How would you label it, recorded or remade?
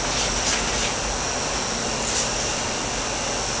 recorded